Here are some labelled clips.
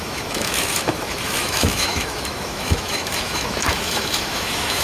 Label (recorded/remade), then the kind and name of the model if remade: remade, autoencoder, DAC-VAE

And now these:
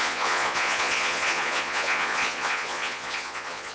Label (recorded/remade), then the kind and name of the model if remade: remade, vocoder, Vocos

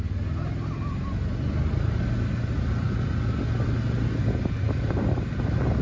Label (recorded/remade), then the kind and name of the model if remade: recorded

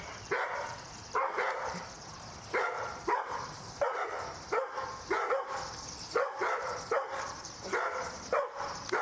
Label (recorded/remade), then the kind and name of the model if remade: remade, vocoder, BigVGAN v2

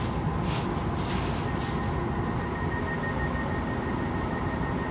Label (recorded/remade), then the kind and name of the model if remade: recorded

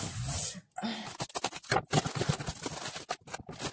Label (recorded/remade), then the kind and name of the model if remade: recorded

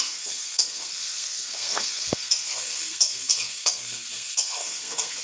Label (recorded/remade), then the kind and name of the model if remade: remade, codec, SNAC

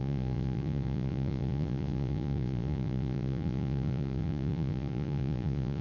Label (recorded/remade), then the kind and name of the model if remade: remade, vocoder, Vocos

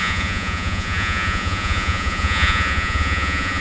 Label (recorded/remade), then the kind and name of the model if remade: remade, vocoder, Vocos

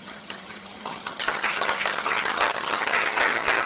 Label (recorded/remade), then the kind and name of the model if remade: remade, vocoder, HiFi-GAN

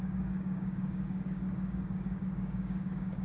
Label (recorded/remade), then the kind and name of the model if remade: remade, codec, DAC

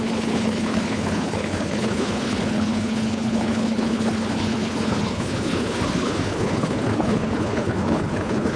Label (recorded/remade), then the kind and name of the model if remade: remade, codec, HILCodec